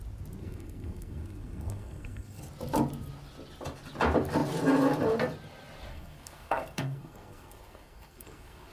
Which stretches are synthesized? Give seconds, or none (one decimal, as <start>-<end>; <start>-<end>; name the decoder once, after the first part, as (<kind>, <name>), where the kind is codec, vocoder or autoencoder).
0.4-2.4 (codec, SNAC); 5.9-8.7